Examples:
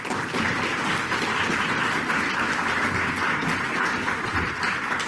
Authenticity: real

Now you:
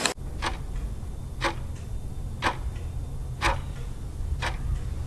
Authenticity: real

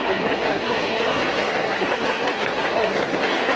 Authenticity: fake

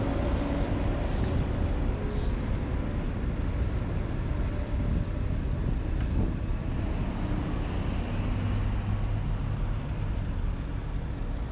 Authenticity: real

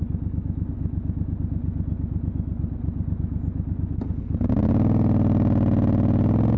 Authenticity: real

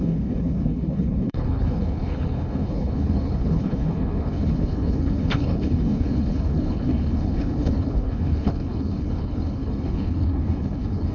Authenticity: fake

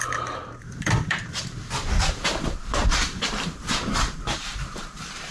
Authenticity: fake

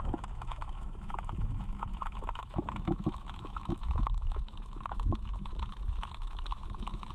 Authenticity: fake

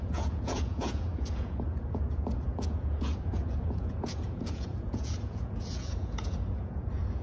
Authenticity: fake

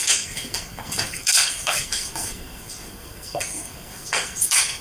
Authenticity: fake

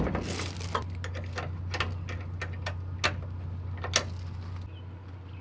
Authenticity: real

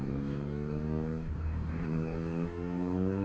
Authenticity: fake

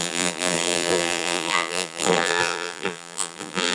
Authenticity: fake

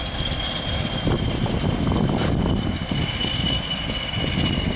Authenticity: real